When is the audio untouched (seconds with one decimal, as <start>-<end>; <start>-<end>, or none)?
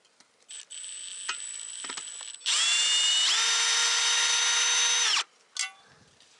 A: 0.0-6.4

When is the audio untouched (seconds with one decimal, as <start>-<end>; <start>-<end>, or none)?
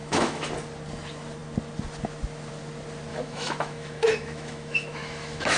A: 0.5-3.1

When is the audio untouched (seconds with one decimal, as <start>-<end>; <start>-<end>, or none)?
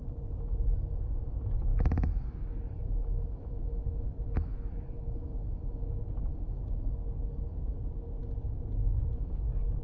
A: 0.0-1.7; 6.6-8.2; 9.4-9.8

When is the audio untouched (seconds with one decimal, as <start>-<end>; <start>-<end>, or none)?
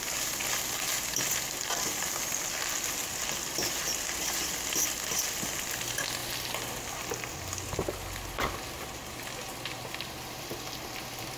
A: 0.0-11.4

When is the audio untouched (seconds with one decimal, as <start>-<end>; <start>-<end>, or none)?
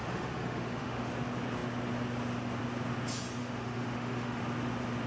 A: 1.1-3.4; 4.4-5.1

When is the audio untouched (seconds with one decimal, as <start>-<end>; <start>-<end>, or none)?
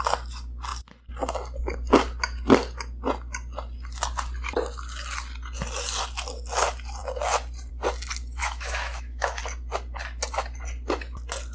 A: 0.0-8.4; 9.4-11.5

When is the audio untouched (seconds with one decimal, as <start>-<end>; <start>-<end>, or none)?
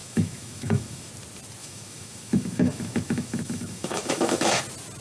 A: 1.1-1.6; 4.6-5.0